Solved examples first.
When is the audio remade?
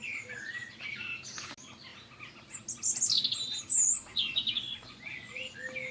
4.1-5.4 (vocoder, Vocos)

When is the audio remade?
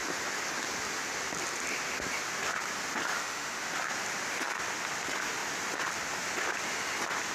3.1-3.7 (autoencoder, DAC-VAE)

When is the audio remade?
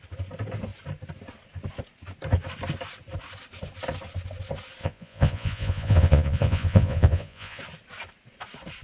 4.8-7.6 (vocoder, Vocos)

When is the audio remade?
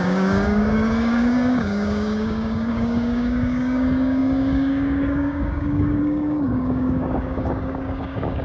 0.0-8.4 (codec, DAC)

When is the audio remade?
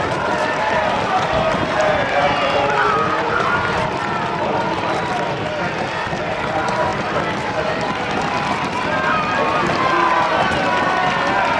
0.0-6.9 (vocoder, BigVGAN v2); 7.7-9.5; 10.5-11.6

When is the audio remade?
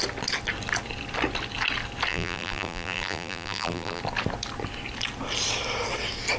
2.1-4.0 (vocoder, BigVGAN v2)